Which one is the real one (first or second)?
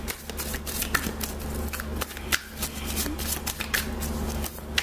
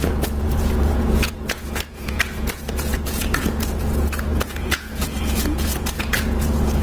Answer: first